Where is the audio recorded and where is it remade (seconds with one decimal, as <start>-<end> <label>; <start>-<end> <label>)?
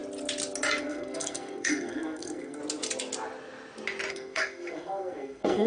0.0-0.8 recorded; 0.8-2.6 remade; 2.6-4.1 recorded; 4.1-5.7 remade